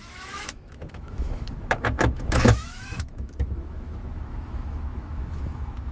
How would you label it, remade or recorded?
remade